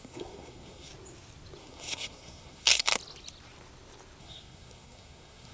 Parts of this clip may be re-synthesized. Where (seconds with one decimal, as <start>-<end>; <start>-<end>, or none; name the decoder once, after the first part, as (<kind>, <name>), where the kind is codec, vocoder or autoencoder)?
0.0-0.9 (codec, SNAC); 1.6-2.9; 4.2-5.5